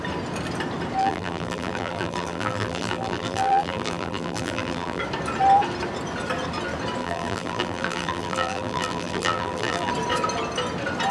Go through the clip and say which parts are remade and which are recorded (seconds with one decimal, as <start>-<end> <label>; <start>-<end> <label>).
0.0-1.0 recorded; 1.0-5.0 remade; 5.0-7.0 recorded; 7.0-9.9 remade; 9.9-11.1 recorded